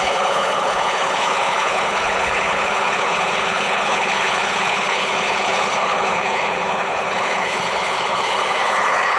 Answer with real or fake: fake